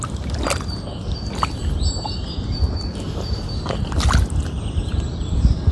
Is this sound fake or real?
real